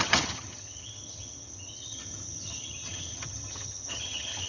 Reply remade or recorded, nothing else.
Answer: remade